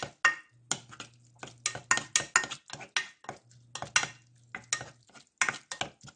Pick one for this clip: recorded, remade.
recorded